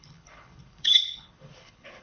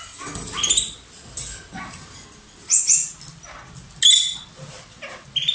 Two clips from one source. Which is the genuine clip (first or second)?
second